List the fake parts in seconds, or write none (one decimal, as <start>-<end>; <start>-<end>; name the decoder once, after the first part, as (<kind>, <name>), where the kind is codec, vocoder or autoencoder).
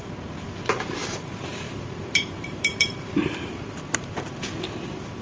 1.0-4.1 (vocoder, BigVGAN v2)